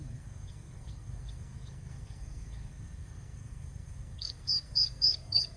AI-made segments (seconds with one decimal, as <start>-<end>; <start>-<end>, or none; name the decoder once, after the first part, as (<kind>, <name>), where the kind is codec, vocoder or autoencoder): 0.0-5.6 (codec, SNAC)